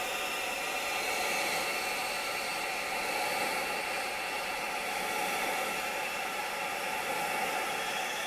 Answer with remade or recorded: recorded